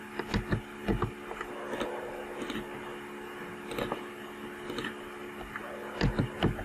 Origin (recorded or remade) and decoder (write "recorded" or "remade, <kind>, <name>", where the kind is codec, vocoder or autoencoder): recorded